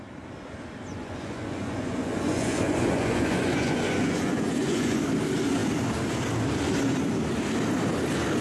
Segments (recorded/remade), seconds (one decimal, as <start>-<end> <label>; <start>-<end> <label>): 0.0-0.9 recorded; 0.9-5.0 remade; 5.0-8.4 recorded